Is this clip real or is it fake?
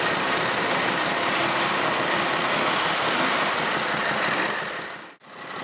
real